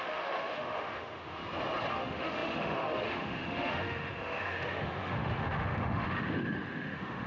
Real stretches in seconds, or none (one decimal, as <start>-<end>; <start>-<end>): 1.4-1.9